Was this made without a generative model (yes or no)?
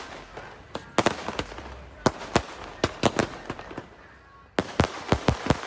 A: yes